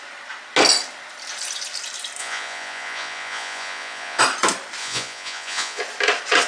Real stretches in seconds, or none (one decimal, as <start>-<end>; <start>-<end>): 0.0-2.2; 4.2-4.8; 5.8-6.5